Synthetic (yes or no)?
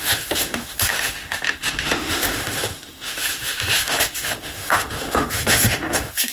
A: yes